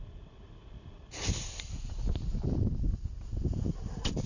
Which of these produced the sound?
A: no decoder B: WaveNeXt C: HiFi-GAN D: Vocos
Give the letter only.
A